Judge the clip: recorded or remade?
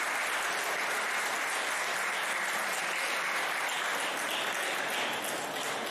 recorded